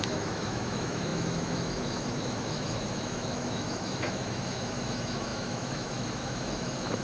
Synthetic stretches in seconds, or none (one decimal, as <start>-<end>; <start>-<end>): 0.0-7.0